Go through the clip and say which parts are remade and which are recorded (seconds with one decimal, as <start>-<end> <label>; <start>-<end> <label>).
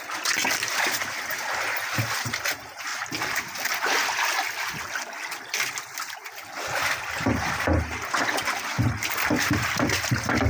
0.0-10.5 recorded